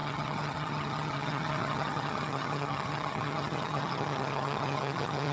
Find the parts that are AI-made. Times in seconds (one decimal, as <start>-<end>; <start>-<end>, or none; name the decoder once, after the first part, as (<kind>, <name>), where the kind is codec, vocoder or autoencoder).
0.0-5.3 (vocoder, HiFi-GAN)